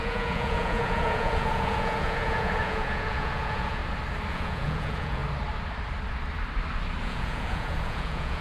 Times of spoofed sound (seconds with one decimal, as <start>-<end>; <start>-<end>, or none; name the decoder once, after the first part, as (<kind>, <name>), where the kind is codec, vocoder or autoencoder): 0.0-3.8 (vocoder, Vocos); 4.3-5.2; 7.0-8.4

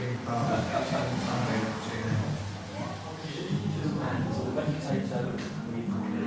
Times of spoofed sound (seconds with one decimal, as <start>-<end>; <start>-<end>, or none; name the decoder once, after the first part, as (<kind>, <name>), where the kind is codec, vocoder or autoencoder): none

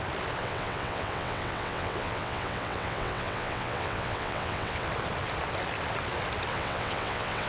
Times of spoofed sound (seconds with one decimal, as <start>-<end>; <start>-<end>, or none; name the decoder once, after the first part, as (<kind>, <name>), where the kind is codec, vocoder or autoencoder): 0.4-4.9 (vocoder, WaveNeXt); 6.5-7.5

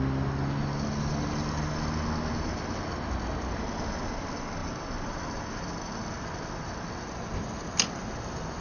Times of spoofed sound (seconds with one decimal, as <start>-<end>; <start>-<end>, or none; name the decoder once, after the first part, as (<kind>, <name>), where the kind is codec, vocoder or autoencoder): none

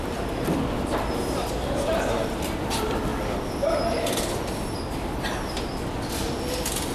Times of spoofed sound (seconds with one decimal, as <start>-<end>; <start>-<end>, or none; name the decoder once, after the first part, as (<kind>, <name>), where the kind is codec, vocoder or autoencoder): none